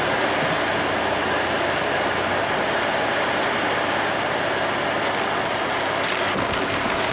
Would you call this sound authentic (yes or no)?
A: yes